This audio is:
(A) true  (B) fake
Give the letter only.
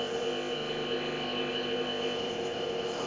B